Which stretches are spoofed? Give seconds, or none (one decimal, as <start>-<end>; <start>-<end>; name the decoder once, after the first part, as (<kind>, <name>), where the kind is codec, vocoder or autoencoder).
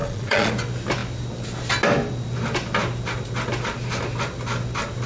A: 0.0-0.5 (vocoder, Vocos)